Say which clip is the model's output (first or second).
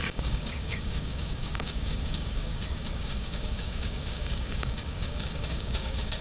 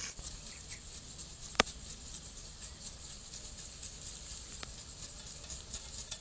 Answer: first